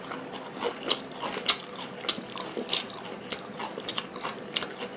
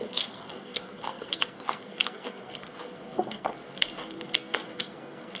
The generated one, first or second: second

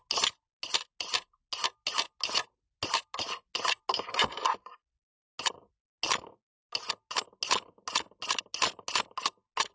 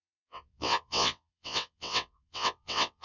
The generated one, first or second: second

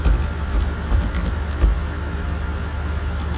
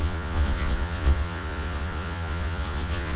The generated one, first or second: second